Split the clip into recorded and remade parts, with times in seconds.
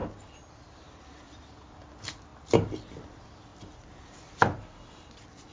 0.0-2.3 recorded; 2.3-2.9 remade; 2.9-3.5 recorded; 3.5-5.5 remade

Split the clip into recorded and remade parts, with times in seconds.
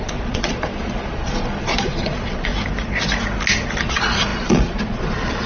0.0-2.5 remade; 2.5-3.8 recorded; 3.8-5.5 remade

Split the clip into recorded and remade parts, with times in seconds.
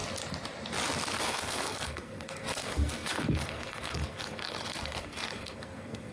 0.0-1.2 recorded; 1.2-6.1 remade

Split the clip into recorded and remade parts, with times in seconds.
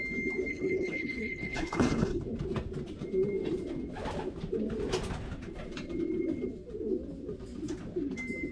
0.0-0.5 recorded; 0.5-2.2 remade; 2.2-8.5 recorded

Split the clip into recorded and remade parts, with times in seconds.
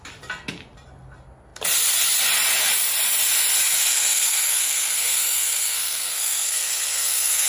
0.0-3.9 recorded; 3.9-7.5 remade